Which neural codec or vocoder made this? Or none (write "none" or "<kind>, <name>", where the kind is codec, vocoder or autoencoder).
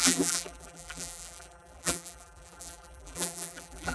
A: vocoder, BigVGAN v2